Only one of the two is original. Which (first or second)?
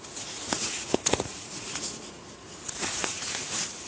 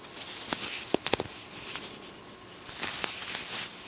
second